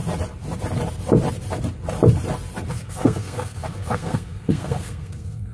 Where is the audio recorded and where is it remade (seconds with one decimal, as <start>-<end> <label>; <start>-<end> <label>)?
0.0-2.7 recorded; 2.7-5.5 remade